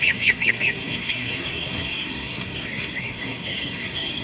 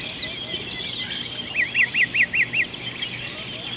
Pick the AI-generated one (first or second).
first